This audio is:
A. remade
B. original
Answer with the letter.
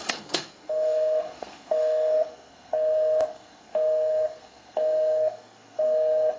A